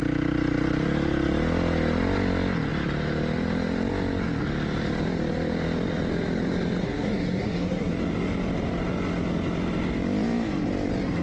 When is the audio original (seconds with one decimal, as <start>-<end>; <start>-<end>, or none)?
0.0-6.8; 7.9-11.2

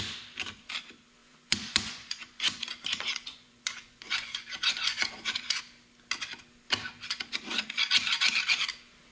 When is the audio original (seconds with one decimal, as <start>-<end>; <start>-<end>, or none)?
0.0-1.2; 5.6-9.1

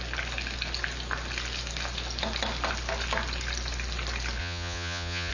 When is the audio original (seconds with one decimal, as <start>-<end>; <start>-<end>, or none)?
0.0-4.4

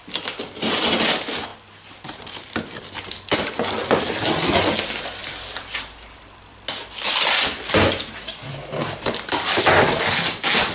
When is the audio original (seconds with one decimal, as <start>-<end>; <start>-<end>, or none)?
0.0-10.7

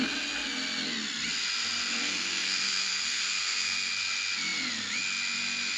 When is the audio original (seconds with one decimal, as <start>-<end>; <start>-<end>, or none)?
0.0-2.0; 3.9-5.8